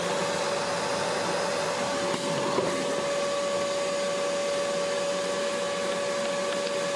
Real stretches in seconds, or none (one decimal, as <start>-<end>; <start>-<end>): 0.0-7.0

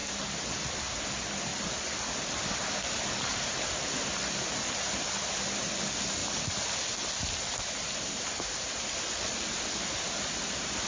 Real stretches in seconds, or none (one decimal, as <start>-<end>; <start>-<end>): 0.0-10.9

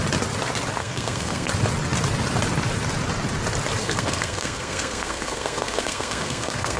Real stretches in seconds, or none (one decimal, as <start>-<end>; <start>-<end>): 0.0-0.8; 1.5-3.8